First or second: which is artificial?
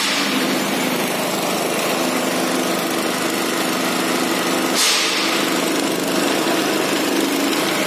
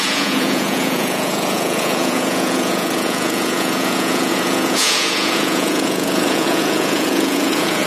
second